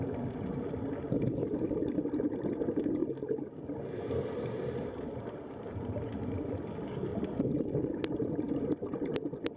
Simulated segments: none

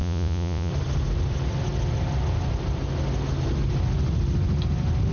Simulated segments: 0.0-0.7

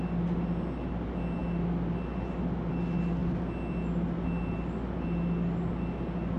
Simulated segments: none

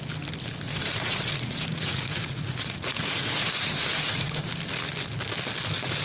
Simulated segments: 0.8-4.4